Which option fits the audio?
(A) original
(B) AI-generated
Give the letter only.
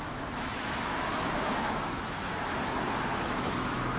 B